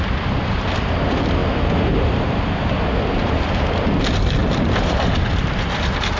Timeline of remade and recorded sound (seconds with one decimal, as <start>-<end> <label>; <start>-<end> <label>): 0.0-4.4 recorded; 4.4-5.3 remade; 5.3-6.2 recorded